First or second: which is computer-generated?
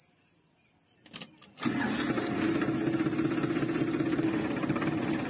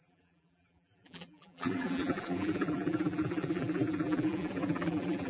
second